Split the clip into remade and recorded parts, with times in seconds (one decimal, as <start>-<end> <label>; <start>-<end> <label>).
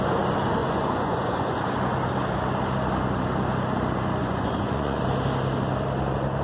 0.0-0.6 recorded; 0.6-1.6 remade; 1.6-4.2 recorded; 4.2-5.0 remade; 5.0-6.4 recorded